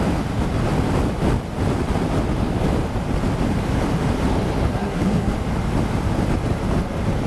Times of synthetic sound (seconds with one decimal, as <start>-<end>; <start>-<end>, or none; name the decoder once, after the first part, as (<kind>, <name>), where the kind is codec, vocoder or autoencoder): 4.7-5.3 (codec, SNAC)